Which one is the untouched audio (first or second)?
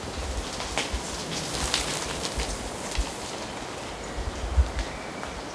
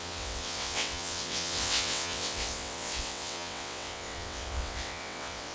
first